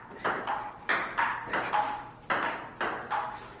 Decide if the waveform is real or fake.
real